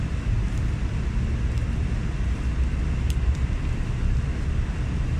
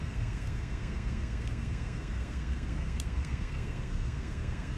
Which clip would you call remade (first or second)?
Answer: second